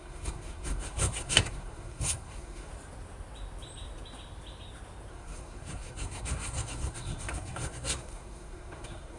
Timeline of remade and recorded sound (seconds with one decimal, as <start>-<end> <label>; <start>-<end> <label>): 0.0-2.7 remade; 2.7-5.1 recorded; 5.1-9.2 remade